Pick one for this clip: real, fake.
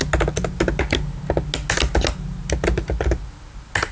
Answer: real